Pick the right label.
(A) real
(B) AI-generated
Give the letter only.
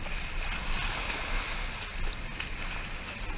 A